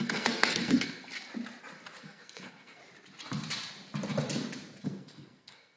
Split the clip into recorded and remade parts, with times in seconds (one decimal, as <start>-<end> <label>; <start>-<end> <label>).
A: 0.0-1.1 remade; 1.1-2.0 recorded; 2.0-2.8 remade; 2.8-4.8 recorded; 4.8-5.8 remade